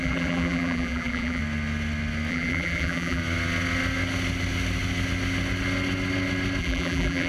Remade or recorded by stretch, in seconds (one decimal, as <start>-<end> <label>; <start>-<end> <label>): 0.0-1.4 remade; 1.4-2.3 recorded; 2.3-3.2 remade; 3.2-6.6 recorded; 6.6-7.3 remade